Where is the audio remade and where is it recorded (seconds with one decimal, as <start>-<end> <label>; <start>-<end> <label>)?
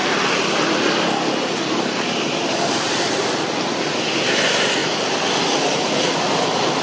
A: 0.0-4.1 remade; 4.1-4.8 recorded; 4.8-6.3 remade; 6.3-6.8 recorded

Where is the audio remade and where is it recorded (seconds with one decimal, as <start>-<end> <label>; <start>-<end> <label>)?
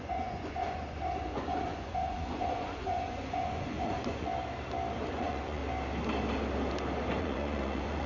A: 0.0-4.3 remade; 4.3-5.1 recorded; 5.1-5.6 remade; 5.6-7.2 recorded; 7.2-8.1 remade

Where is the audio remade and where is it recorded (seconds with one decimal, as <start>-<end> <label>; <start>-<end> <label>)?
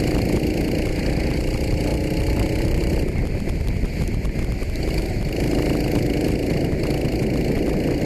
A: 0.0-8.1 recorded